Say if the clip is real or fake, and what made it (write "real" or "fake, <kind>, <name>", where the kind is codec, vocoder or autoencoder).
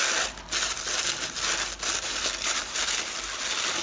real